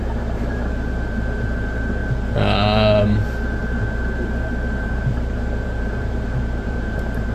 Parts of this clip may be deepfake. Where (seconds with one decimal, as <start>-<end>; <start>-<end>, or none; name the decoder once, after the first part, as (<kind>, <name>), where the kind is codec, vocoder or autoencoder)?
0.0-2.0 (vocoder, BigVGAN v2); 3.0-7.3